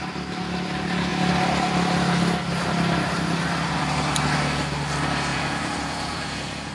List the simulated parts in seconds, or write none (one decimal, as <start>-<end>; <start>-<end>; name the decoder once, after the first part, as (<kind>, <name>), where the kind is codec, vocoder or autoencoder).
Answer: 5.3-6.7 (vocoder, Vocos)